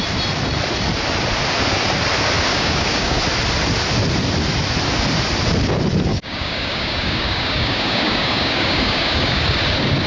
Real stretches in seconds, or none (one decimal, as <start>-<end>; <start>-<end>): 0.0-2.5; 3.2-6.1; 9.6-10.1